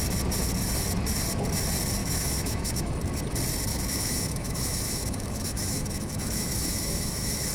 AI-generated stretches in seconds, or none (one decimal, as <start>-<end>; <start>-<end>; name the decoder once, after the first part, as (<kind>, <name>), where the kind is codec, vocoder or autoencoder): 2.0-2.9 (autoencoder, DAC-VAE); 3.7-7.5